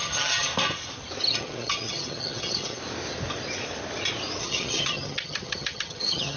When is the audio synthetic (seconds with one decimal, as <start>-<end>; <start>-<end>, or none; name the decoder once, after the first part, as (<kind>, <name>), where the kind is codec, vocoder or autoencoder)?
0.0-0.5 (vocoder, HiFi-GAN); 1.3-2.8; 4.4-6.4